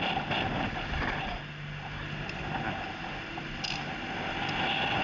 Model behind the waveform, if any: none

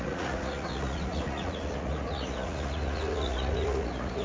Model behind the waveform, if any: vocoder, Vocos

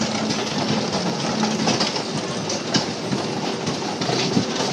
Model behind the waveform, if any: none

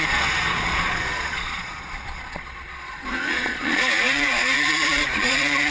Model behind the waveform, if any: vocoder, Vocos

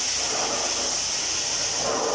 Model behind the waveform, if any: none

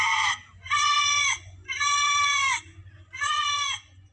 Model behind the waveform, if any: vocoder, Vocos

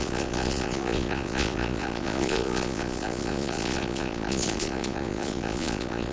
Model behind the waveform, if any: vocoder, Vocos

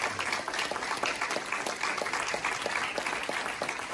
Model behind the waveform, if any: none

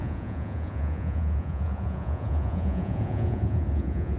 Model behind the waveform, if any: vocoder, Vocos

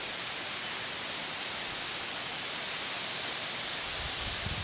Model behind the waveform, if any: none